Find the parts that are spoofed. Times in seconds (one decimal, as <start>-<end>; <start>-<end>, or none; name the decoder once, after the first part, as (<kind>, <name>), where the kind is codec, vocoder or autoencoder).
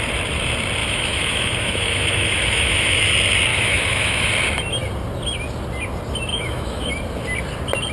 0.8-3.0 (autoencoder, DAC-VAE); 3.5-4.3; 6.3-6.9